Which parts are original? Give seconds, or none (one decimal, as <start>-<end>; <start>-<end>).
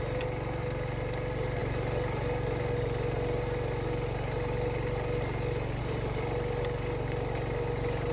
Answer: 0.0-8.1